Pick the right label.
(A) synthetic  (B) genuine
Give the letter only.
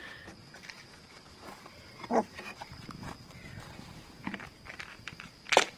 A